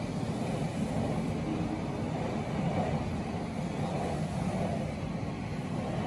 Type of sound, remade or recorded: recorded